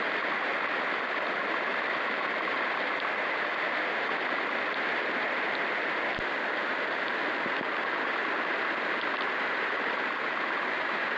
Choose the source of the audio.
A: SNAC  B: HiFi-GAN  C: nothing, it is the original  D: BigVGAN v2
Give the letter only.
C